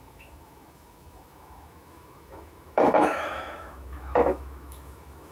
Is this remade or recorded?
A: remade